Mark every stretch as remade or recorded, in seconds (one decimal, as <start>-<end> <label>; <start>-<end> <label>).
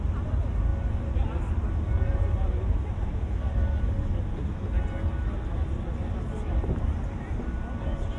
0.0-8.2 recorded